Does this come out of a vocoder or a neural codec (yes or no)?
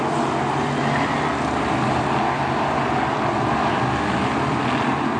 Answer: no